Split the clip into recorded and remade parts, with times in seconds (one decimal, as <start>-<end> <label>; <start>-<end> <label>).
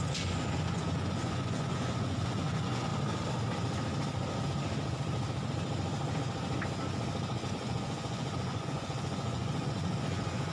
0.0-2.9 remade; 2.9-7.5 recorded; 7.5-10.5 remade